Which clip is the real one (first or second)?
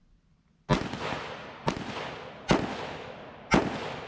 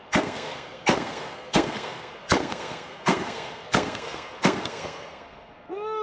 first